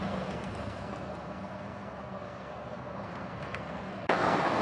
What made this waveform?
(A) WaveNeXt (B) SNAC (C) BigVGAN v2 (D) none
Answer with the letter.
B